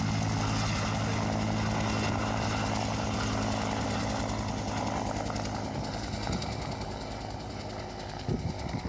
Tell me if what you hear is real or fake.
real